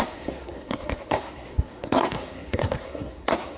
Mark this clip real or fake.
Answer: fake